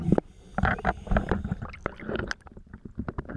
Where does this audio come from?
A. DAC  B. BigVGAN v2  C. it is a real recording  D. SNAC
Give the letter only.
C